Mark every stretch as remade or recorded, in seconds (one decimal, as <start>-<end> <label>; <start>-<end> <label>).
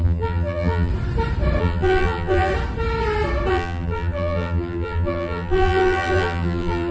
0.0-0.9 remade; 0.9-1.6 recorded; 1.6-2.5 remade; 2.5-3.5 recorded; 3.5-6.9 remade